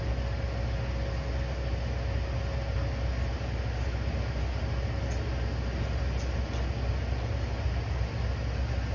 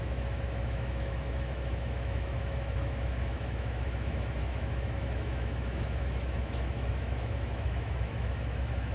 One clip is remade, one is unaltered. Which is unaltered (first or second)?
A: first